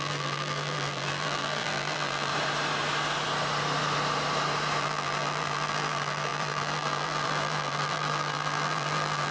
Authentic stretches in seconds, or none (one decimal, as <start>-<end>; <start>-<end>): 2.3-4.8